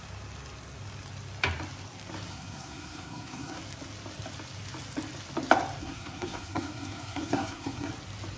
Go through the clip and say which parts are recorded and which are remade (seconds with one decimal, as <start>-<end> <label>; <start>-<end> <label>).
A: 0.0-2.3 recorded; 2.3-3.6 remade; 3.6-5.8 recorded; 5.8-7.9 remade; 7.9-8.4 recorded